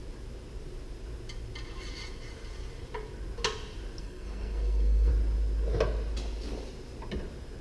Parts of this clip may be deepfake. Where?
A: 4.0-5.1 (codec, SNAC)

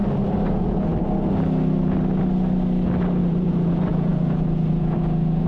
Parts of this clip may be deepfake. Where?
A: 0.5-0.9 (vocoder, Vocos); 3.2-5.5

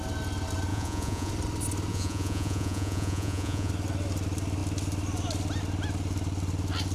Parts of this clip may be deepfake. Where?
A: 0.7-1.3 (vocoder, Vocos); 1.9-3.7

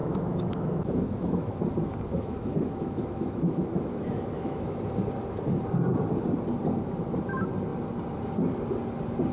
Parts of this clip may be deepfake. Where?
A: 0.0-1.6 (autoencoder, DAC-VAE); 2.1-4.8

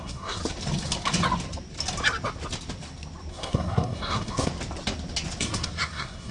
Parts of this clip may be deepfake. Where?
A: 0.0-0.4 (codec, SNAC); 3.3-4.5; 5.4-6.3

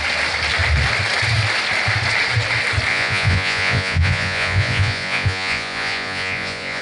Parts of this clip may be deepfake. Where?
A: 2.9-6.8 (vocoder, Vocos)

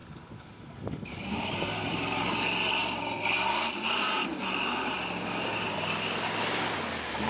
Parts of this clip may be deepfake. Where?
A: 0.0-1.9 (vocoder, BigVGAN v2)

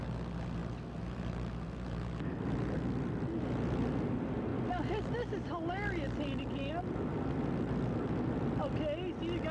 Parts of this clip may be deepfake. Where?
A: none